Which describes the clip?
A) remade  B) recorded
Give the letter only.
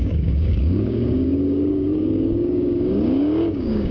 A